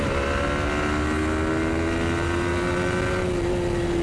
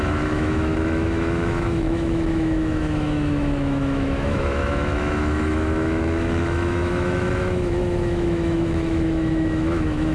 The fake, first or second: second